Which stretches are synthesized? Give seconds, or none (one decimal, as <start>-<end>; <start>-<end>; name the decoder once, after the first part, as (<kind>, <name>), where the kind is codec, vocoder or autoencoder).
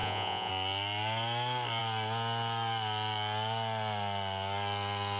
0.0-0.5 (vocoder, Vocos)